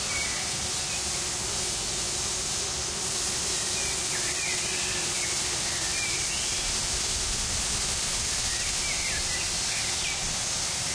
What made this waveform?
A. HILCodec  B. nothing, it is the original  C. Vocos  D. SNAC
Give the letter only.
B